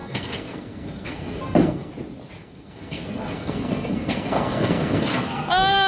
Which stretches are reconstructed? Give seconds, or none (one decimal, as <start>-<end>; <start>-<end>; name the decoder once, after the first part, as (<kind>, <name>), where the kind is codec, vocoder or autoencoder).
0.0-1.9 (codec, SNAC); 2.4-5.9